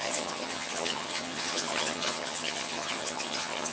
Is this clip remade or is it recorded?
remade